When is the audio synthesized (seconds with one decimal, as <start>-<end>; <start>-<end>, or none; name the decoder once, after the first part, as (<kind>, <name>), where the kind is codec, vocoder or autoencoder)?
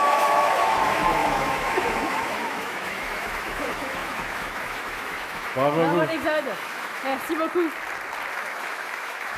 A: 0.0-7.1 (autoencoder, DAC-VAE); 8.3-9.4